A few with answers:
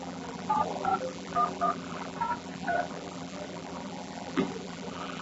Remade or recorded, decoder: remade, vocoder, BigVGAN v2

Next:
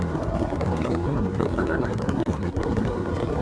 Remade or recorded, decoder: remade, codec, SNAC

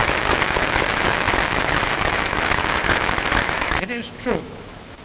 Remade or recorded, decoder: remade, autoencoder, DAC-VAE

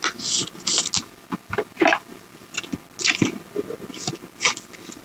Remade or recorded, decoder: recorded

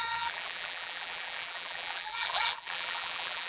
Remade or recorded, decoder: remade, vocoder, BigVGAN v2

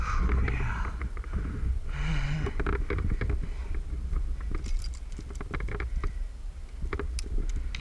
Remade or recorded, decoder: recorded